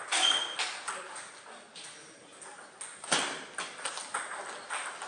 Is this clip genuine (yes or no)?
yes